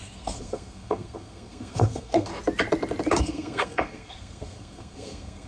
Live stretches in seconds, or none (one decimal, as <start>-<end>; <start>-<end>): 2.3-3.2